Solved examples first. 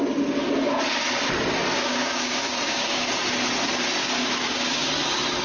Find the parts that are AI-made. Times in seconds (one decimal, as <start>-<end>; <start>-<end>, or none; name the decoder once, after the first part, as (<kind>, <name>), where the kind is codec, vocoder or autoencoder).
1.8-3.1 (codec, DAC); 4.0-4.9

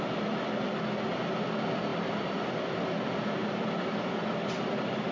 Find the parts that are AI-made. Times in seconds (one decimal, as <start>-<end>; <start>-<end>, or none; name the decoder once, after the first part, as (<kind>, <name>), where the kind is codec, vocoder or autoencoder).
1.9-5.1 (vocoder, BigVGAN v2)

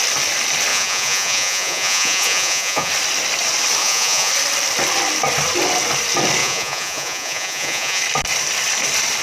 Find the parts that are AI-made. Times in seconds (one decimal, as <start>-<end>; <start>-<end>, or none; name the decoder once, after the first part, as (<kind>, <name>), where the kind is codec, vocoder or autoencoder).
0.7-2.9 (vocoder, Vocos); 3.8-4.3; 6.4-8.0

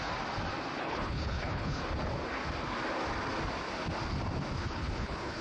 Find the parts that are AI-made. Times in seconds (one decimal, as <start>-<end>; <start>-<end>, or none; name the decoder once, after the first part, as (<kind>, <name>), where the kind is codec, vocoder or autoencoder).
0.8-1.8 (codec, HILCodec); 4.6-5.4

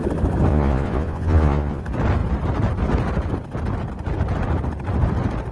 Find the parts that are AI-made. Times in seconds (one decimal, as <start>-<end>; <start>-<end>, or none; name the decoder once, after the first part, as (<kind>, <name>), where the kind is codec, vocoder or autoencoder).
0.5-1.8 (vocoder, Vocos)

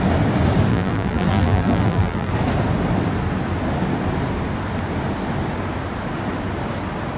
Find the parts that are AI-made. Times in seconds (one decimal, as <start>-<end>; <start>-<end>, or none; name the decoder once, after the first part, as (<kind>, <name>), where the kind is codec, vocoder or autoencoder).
0.7-2.3 (vocoder, BigVGAN v2)

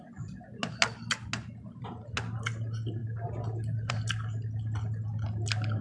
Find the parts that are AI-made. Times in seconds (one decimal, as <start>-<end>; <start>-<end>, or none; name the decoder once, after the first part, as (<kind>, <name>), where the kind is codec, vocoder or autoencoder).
none

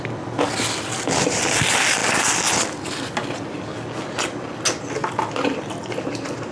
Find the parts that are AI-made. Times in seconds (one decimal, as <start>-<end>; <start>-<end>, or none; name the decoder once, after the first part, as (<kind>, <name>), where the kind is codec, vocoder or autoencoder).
none